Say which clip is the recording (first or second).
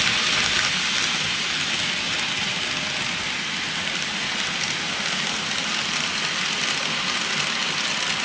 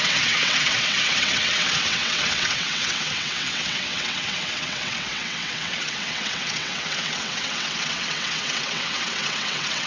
first